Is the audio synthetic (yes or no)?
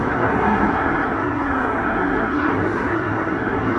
yes